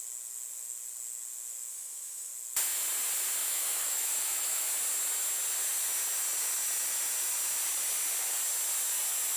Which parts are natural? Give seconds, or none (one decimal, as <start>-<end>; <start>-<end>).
0.0-1.7; 2.3-3.4; 4.7-9.4